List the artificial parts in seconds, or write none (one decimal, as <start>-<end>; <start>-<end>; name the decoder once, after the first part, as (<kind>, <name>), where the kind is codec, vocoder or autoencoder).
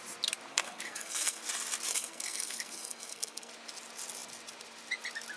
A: 0.5-1.4 (codec, SNAC); 1.9-3.5